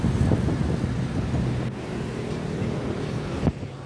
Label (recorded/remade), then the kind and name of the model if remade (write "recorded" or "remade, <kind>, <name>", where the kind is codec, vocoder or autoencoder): recorded